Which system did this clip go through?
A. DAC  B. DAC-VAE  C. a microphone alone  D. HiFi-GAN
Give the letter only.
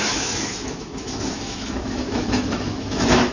B